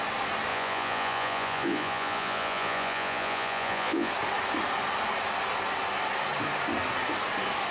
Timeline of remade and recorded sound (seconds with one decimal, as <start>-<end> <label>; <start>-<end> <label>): 0.0-0.5 recorded; 0.5-4.1 remade; 4.1-7.7 recorded